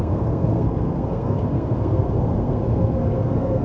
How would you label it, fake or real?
fake